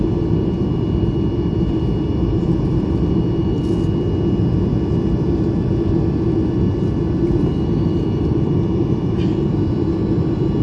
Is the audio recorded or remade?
recorded